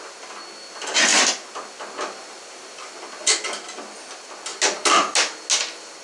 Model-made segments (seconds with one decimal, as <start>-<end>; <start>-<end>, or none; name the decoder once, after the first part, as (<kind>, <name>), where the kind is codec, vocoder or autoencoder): none